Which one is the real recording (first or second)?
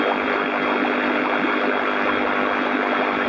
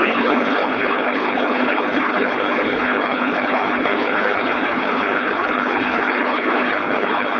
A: first